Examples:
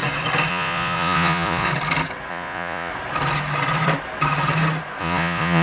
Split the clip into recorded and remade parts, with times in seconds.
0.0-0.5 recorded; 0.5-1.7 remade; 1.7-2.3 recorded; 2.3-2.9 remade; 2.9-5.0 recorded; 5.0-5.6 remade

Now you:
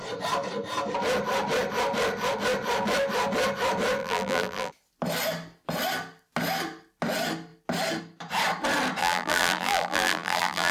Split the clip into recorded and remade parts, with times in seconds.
0.0-4.0 recorded; 4.0-4.7 remade; 4.7-9.0 recorded; 9.0-10.7 remade

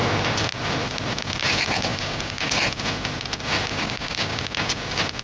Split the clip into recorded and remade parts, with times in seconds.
0.0-1.9 recorded; 1.9-2.5 remade; 2.5-3.7 recorded; 3.7-4.4 remade; 4.4-5.2 recorded

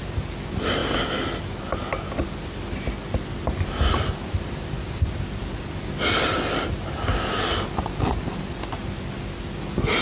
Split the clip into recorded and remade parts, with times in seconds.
0.0-10.0 recorded

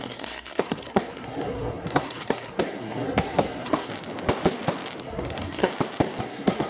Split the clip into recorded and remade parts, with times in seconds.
0.0-3.9 remade; 3.9-5.0 recorded; 5.0-5.7 remade; 5.7-6.2 recorded; 6.2-6.7 remade

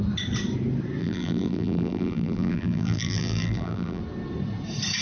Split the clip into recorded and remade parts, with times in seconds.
0.0-1.0 recorded; 1.0-4.0 remade; 4.0-5.0 recorded